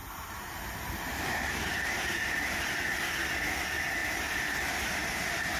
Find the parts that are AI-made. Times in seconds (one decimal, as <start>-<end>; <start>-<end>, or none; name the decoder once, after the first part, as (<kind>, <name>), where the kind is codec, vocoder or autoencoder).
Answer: 0.0-2.7 (vocoder, BigVGAN v2); 4.0-4.9